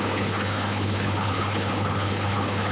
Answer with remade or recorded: remade